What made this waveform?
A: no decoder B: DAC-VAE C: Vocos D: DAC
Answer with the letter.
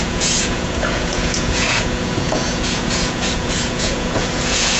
C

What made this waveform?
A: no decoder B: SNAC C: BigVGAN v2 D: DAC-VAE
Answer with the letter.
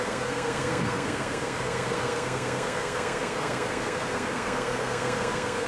B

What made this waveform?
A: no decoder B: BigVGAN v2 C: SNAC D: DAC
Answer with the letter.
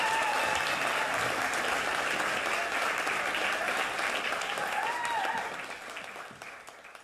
A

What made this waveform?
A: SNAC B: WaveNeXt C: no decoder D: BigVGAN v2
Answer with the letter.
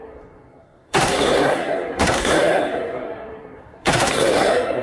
A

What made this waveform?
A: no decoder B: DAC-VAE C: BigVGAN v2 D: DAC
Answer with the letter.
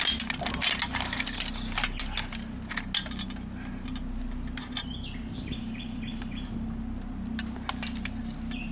A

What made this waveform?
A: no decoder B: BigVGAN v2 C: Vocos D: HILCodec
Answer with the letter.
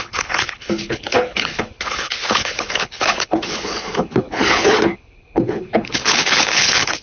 D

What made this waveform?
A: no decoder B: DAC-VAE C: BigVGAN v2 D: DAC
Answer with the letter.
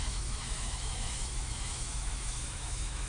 B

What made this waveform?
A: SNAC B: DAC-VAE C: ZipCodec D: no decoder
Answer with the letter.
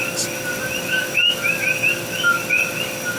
D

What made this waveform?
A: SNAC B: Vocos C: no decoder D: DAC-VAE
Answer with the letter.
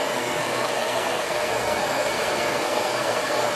A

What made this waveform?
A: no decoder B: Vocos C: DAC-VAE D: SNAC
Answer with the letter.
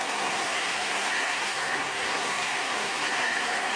D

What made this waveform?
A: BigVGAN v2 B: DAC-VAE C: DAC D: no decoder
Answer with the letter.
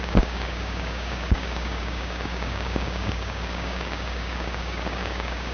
C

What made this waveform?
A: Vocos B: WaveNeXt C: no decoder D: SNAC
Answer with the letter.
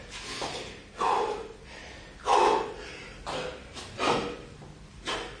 C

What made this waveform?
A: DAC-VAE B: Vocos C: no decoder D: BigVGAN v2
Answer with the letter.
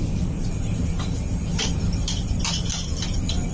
C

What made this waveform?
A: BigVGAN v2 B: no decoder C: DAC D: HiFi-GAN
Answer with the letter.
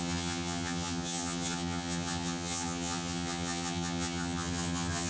D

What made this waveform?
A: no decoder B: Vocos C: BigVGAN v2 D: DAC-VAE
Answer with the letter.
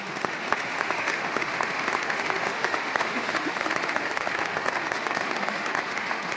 D